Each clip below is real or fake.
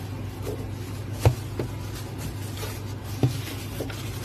real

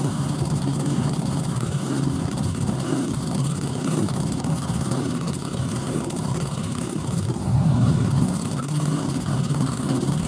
fake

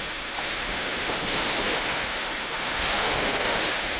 fake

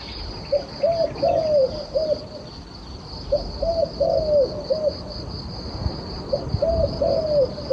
real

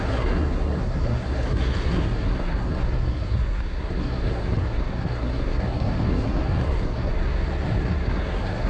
fake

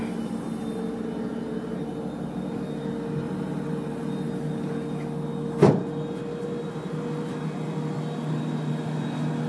real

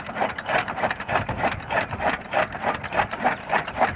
real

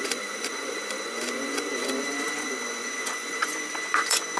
fake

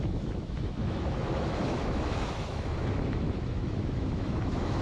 fake